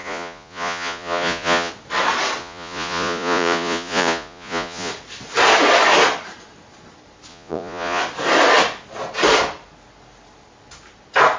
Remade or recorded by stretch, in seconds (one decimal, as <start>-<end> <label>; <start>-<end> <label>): 0.0-1.7 remade; 1.7-2.4 recorded; 2.4-4.9 remade; 4.9-7.3 recorded; 7.3-8.0 remade; 8.0-11.4 recorded